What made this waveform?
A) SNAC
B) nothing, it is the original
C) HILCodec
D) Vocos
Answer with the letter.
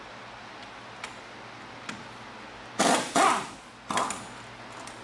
B